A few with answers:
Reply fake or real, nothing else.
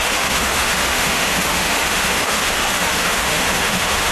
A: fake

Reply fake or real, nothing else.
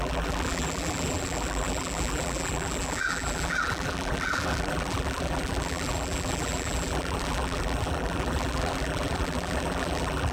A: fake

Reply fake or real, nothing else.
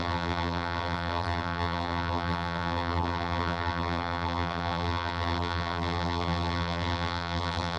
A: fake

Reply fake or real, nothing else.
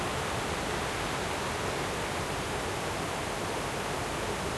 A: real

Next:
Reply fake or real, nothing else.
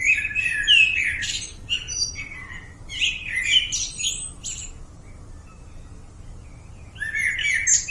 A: real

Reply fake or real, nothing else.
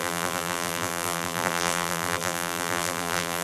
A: fake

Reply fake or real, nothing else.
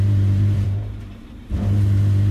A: fake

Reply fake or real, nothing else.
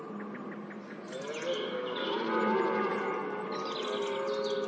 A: real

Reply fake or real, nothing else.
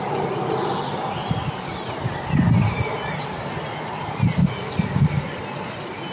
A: real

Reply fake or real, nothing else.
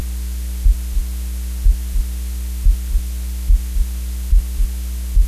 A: real